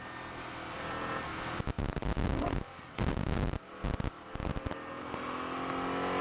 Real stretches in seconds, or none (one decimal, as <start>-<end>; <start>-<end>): 0.0-6.2